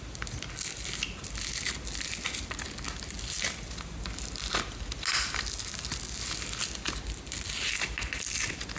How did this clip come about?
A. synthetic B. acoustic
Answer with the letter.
B